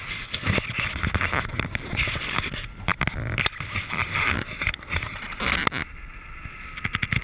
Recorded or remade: recorded